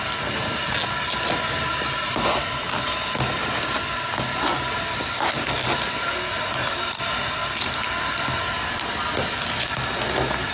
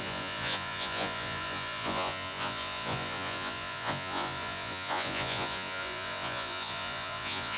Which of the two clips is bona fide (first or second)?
first